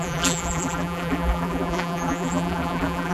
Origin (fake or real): fake